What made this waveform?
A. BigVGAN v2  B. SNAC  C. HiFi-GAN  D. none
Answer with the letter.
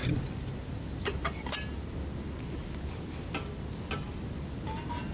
D